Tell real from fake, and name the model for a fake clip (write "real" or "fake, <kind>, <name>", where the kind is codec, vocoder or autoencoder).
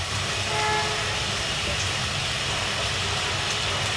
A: real